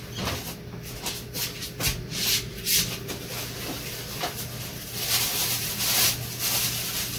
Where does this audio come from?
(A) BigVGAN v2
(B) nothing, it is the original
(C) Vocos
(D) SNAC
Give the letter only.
B